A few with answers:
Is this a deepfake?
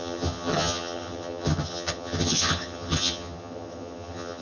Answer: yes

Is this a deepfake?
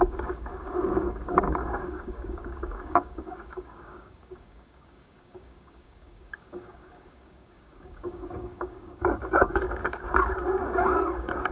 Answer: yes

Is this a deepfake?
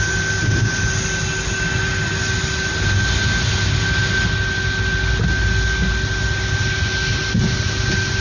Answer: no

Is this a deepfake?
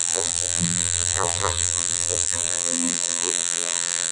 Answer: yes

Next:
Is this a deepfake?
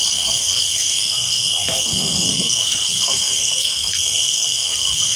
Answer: yes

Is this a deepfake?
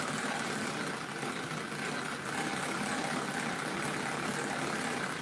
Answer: no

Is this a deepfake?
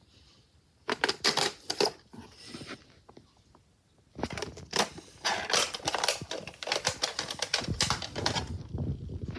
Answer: no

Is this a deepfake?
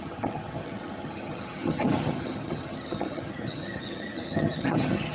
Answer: yes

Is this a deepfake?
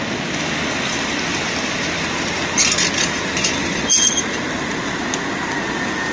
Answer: no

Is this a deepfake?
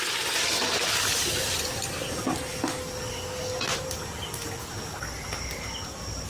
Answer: no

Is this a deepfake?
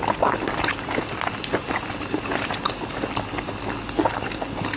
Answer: no